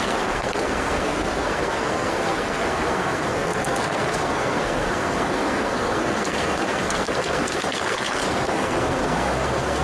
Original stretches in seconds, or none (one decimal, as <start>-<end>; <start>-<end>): none